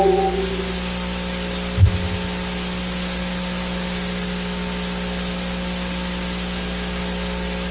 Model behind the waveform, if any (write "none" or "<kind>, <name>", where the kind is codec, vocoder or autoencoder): none